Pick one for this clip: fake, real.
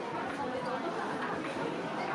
real